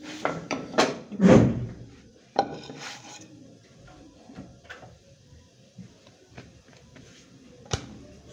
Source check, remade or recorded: remade